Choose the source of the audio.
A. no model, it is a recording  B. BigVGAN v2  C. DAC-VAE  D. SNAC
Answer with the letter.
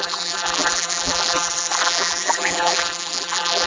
B